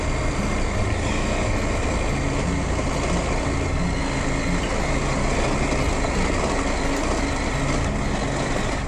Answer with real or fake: real